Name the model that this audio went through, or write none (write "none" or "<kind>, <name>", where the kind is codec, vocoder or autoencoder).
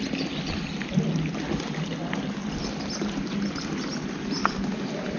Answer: none